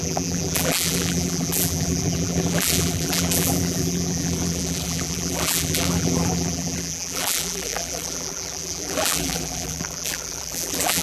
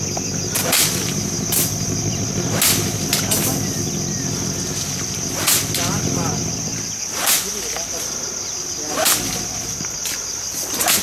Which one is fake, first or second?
first